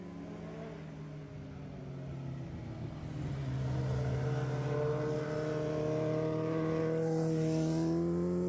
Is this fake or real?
real